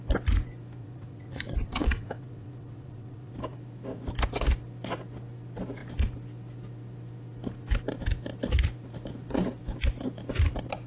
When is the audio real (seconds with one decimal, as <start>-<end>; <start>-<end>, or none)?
0.0-0.8; 3.3-10.9